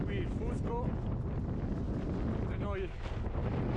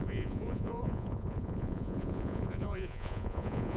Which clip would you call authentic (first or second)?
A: first